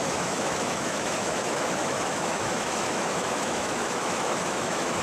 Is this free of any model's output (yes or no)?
no